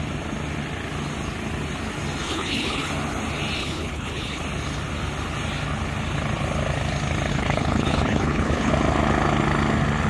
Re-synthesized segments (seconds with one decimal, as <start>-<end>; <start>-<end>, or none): 2.2-2.9; 3.6-4.4; 7.3-8.7